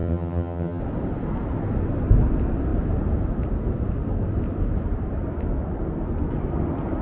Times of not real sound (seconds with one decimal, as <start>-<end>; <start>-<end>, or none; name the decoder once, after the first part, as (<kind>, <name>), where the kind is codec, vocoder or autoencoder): 0.0-0.8 (vocoder, HiFi-GAN)